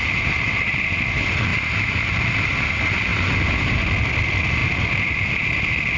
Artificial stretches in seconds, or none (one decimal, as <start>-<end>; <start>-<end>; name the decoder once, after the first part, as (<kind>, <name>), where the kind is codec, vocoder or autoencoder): none